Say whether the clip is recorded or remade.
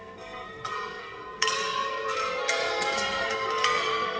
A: remade